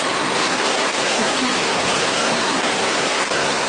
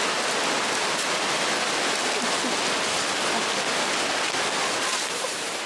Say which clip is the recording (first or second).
second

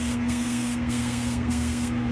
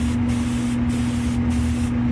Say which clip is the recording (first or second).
second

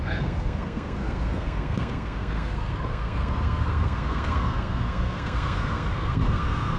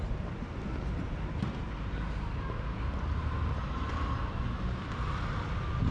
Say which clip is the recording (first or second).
second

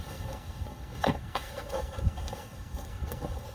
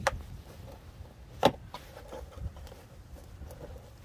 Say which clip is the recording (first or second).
second